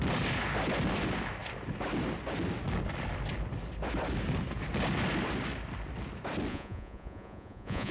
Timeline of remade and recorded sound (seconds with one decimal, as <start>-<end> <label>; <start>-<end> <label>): 0.0-6.5 recorded; 6.5-7.9 remade